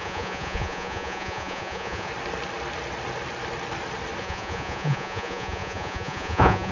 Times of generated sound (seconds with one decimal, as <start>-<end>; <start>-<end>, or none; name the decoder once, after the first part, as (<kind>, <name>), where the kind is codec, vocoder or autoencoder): 0.0-2.1 (vocoder, Vocos); 4.2-6.7